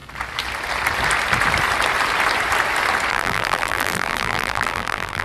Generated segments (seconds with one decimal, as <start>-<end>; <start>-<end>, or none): 3.1-5.2